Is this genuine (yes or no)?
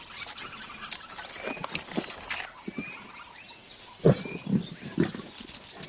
yes